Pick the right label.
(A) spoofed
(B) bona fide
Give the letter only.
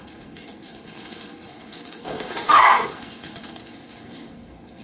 A